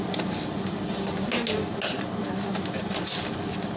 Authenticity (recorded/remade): recorded